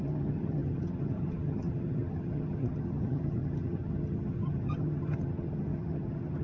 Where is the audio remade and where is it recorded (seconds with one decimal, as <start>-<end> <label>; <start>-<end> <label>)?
0.0-6.4 remade